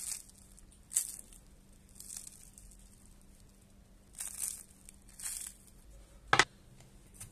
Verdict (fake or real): real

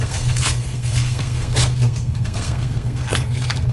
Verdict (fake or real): fake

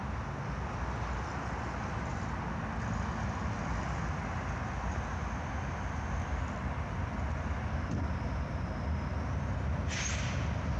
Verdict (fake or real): real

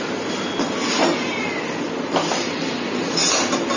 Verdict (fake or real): real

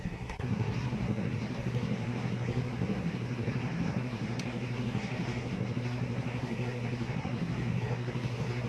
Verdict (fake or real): fake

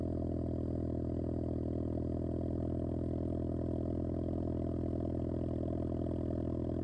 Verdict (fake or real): real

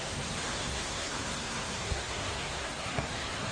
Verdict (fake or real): fake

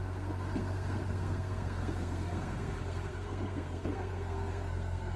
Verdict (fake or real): fake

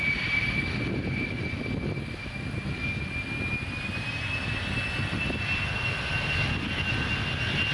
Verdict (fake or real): real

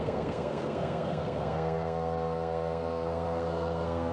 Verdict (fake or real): fake